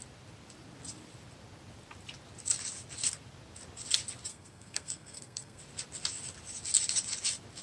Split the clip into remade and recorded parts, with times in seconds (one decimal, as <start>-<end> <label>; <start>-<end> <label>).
0.0-4.3 recorded; 4.3-5.6 remade; 5.6-7.6 recorded